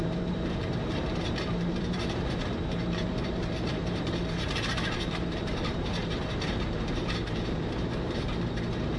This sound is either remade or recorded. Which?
remade